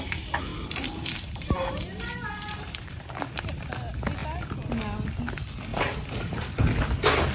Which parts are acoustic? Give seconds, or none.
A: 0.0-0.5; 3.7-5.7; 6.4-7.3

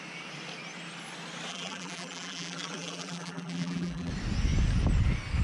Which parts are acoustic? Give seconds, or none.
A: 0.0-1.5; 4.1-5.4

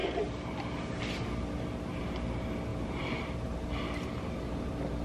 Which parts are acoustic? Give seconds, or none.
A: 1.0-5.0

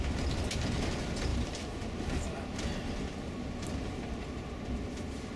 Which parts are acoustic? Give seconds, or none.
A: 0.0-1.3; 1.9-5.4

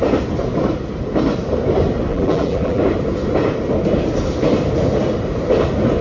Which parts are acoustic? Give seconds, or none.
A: 0.0-2.1; 2.8-6.0